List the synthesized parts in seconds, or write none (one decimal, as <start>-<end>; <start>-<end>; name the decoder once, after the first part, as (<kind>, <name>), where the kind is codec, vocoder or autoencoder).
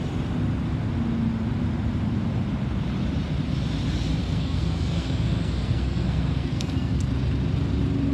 4.2-7.1 (codec, SNAC)